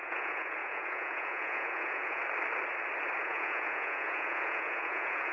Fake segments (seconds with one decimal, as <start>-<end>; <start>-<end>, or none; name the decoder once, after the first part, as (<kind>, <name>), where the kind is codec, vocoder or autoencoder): 0.0-2.2 (vocoder, Vocos); 3.2-5.3